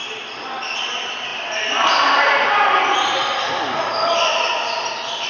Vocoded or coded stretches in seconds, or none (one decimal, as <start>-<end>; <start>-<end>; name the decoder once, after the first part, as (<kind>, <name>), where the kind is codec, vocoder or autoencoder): none